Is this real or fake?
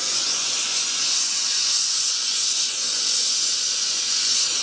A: fake